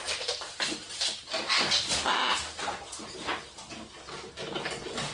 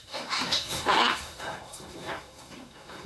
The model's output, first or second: second